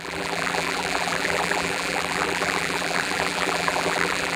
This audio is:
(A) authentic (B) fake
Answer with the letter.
B